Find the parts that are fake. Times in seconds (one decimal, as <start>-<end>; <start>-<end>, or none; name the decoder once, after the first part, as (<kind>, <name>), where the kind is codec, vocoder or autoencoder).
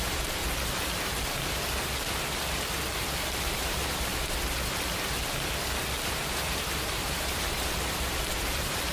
0.0-0.4 (vocoder, BigVGAN v2); 3.4-4.1; 6.0-8.9